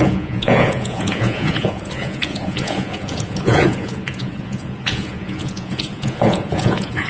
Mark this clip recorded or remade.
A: remade